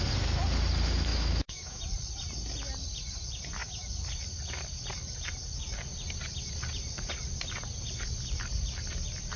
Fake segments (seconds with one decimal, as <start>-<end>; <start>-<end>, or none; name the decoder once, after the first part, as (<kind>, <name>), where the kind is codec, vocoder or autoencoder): 1.1-1.8 (autoencoder, DAC-VAE)